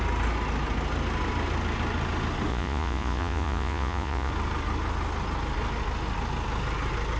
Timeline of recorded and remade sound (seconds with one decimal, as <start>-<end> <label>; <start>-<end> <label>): 0.0-2.5 recorded; 2.5-4.3 remade; 4.3-7.2 recorded

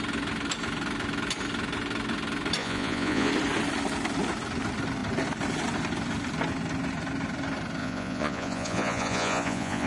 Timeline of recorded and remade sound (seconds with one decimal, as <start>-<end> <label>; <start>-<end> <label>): 0.0-2.6 recorded; 2.6-3.3 remade; 3.3-7.8 recorded; 7.8-9.9 remade